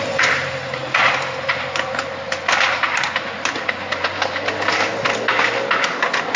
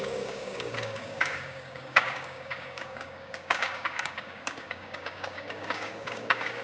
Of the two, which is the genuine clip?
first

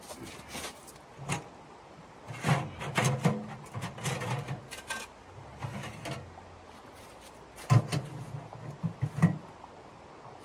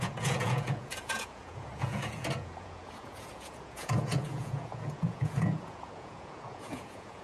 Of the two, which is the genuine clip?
first